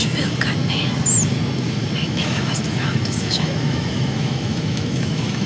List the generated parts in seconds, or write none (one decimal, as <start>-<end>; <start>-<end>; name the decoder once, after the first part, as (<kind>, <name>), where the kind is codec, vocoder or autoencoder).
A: 2.0-5.5 (autoencoder, DAC-VAE)